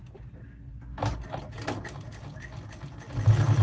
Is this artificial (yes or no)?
no